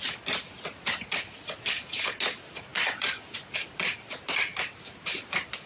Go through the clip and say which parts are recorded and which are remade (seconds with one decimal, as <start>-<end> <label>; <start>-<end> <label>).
0.0-2.7 recorded; 2.7-3.3 remade; 3.3-5.7 recorded